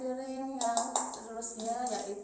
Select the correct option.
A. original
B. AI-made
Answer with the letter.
B